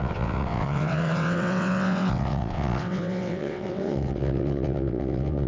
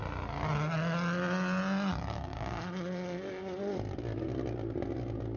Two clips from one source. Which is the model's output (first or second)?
first